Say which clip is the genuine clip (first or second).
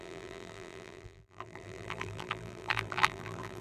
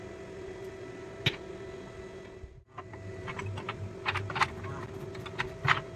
second